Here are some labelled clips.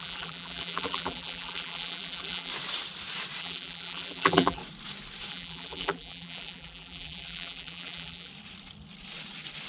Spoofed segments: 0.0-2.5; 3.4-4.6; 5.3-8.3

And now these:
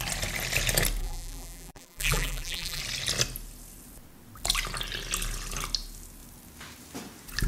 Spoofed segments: 1.0-2.8

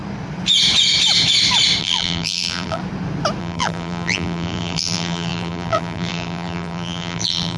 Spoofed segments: 1.8-2.8; 3.4-7.6

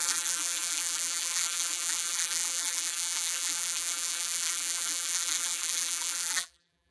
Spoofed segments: 0.0-6.9

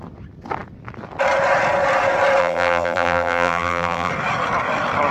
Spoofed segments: 2.4-4.1

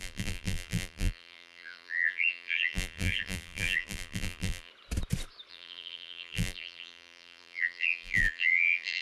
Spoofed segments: 0.0-4.7; 5.5-9.0

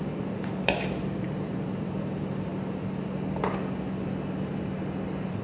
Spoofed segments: 0.0-2.5